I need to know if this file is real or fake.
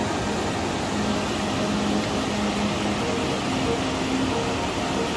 real